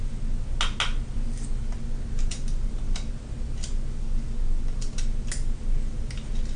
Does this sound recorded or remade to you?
recorded